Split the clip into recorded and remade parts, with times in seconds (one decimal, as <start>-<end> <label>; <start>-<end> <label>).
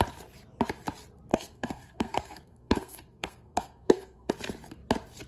0.0-1.3 recorded; 1.3-4.3 remade; 4.3-5.3 recorded